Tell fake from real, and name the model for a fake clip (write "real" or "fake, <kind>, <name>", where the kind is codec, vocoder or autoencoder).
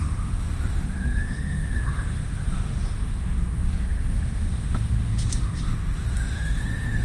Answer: fake, autoencoder, DAC-VAE